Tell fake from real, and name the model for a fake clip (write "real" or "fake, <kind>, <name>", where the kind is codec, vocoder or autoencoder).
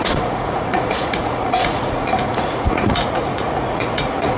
fake, vocoder, Vocos